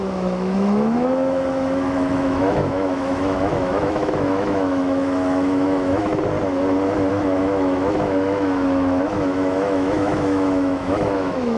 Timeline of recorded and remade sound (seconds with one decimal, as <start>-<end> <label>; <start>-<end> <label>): 0.0-6.1 remade; 6.1-7.1 recorded; 7.1-11.6 remade